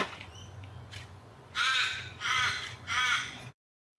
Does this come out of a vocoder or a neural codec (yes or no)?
yes